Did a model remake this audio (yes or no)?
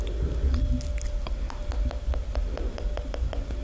no